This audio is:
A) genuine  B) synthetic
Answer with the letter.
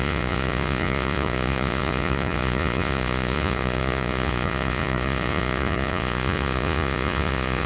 B